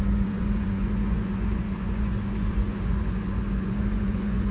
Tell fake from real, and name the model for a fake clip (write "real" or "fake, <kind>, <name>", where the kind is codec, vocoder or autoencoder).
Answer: fake, vocoder, Vocos